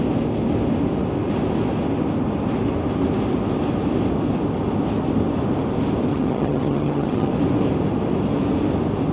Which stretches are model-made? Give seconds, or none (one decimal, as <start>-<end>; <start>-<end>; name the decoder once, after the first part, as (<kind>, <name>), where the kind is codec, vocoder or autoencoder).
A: 6.1-7.3 (vocoder, HiFi-GAN)